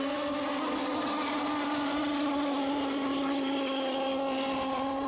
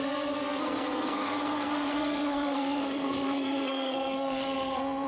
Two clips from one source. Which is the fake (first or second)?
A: second